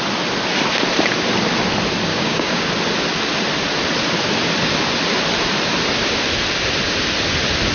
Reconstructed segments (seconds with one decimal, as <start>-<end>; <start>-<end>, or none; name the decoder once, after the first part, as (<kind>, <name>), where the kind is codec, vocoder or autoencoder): 2.1-2.7 (codec, DAC)